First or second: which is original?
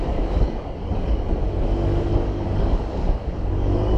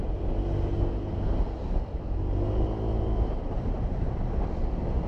second